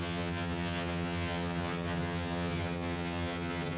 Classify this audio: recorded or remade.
remade